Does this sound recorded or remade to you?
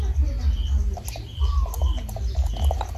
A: recorded